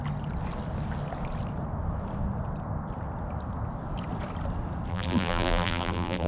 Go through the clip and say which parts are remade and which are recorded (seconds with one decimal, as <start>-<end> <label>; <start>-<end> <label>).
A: 0.0-4.9 recorded; 4.9-6.3 remade